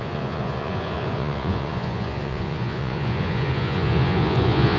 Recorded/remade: remade